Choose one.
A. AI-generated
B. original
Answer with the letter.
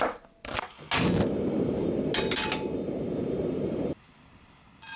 B